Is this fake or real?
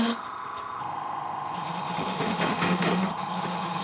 fake